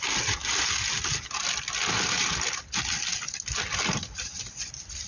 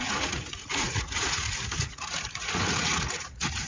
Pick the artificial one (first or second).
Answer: second